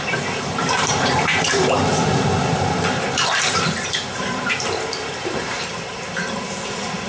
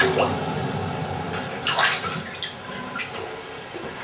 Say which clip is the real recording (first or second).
second